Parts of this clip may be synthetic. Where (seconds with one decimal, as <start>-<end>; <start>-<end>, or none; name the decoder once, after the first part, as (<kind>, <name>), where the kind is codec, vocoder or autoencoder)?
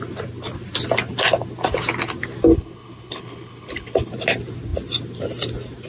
2.5-4.1 (codec, HILCodec)